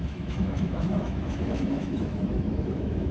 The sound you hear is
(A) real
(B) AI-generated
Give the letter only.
B